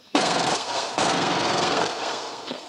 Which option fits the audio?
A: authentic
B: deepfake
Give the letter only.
B